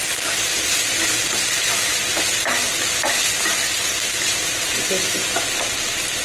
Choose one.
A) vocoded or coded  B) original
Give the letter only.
B